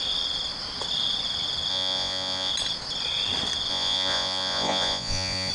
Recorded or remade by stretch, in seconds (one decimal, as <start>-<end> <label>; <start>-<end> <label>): 0.0-1.7 recorded; 1.7-2.5 remade; 2.5-3.7 recorded; 3.7-5.5 remade